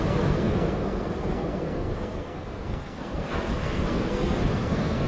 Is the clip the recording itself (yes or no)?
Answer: no